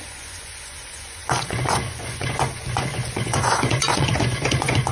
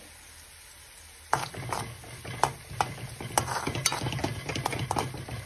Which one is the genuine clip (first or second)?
second